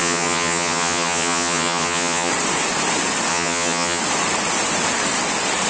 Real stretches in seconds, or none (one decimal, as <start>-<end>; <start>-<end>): 2.3-3.3; 4.0-5.7